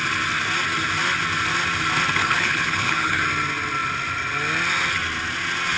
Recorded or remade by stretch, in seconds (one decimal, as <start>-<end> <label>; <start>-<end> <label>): 0.0-2.2 recorded; 2.2-3.2 remade; 3.2-5.8 recorded